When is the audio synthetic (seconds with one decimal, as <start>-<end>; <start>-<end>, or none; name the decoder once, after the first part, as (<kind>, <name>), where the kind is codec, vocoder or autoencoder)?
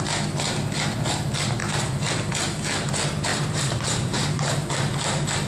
3.3-4.5 (vocoder, BigVGAN v2)